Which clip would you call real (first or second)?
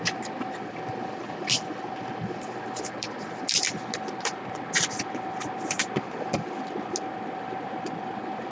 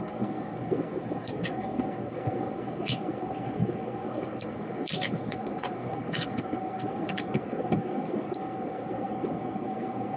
first